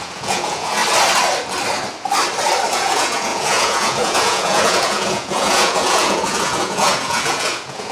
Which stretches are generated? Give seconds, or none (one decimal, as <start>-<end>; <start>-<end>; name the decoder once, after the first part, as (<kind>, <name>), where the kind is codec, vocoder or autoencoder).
0.0-0.8 (vocoder, Vocos); 2.7-7.9